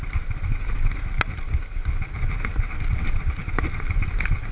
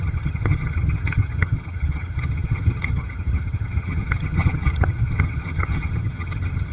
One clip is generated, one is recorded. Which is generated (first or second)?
second